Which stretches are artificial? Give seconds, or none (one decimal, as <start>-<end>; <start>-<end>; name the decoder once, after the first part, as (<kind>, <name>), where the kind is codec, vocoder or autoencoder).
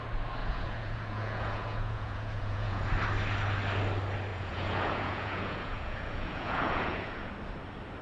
0.4-2.9 (vocoder, Vocos); 4.3-7.3